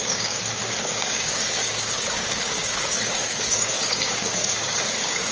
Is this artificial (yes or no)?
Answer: yes